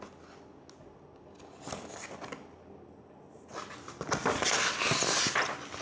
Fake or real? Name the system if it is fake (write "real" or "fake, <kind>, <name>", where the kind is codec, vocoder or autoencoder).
real